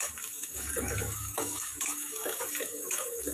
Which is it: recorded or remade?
remade